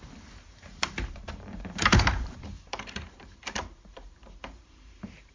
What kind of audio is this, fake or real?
fake